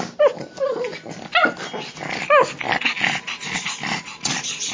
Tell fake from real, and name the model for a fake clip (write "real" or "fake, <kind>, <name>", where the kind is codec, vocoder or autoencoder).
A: real